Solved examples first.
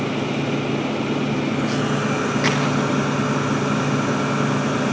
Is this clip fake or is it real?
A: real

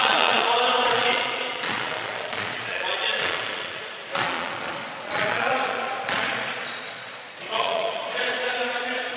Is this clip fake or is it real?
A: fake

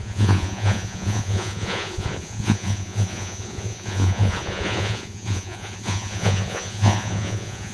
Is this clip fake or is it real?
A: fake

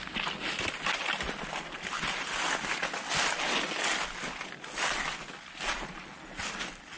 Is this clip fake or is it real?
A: real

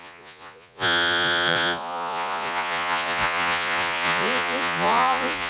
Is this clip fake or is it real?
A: fake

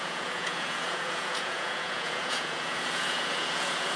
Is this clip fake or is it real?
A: fake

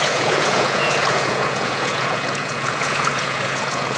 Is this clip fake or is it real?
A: fake